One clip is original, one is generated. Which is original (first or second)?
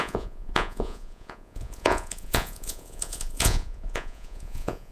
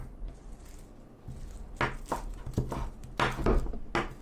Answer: second